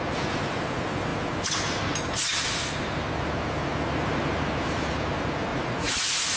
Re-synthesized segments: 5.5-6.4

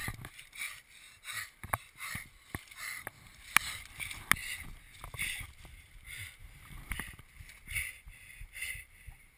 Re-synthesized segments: 6.4-6.9; 8.6-9.4

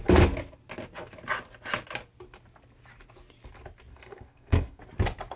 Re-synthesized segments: 3.9-4.8

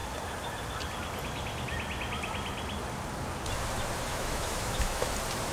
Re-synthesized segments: 4.1-5.1

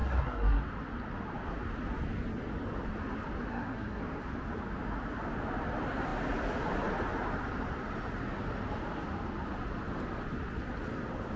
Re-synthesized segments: 0.0-0.6; 3.5-4.0

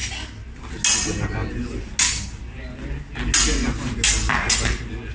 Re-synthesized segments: none